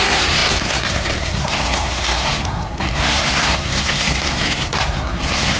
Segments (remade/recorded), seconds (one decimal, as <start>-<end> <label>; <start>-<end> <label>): 0.0-5.6 remade

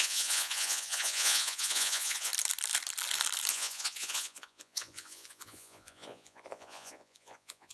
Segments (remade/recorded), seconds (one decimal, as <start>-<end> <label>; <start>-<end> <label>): 0.0-2.3 remade; 2.3-3.5 recorded; 3.5-7.7 remade

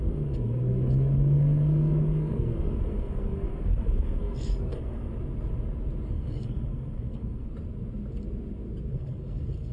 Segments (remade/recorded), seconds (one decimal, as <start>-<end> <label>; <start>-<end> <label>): 0.0-5.1 remade; 5.1-6.1 recorded; 6.1-7.5 remade; 7.5-8.9 recorded; 8.9-9.7 remade

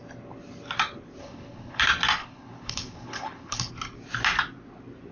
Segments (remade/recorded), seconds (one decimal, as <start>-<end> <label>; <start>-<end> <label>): 0.0-1.2 recorded; 1.2-1.8 remade; 1.8-2.2 recorded; 2.2-3.7 remade; 3.7-5.1 recorded